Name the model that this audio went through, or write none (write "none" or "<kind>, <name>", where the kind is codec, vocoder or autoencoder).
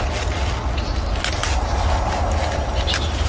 none